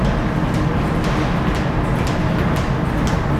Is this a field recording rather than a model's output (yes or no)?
yes